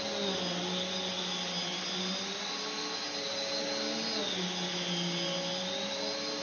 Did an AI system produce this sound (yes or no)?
no